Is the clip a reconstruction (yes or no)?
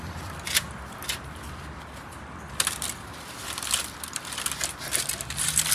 yes